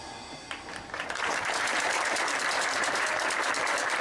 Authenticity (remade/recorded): remade